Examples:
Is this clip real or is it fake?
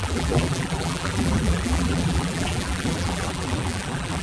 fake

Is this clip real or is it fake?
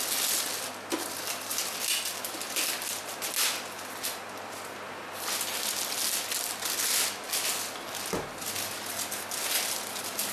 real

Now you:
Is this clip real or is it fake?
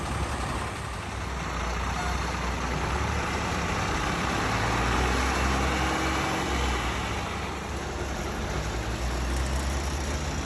real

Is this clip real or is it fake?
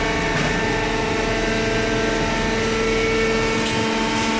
real